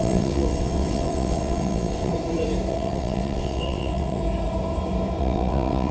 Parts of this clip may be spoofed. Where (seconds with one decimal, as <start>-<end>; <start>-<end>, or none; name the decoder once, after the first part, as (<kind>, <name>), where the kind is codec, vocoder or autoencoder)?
0.0-2.1 (vocoder, WaveNeXt); 2.7-4.2; 5.2-5.9